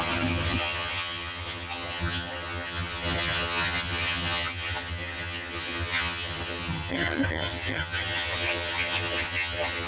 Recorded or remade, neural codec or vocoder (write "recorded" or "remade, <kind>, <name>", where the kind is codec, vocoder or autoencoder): remade, vocoder, HiFi-GAN